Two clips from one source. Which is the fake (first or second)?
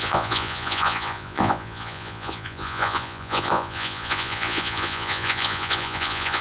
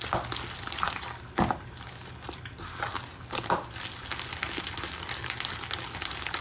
first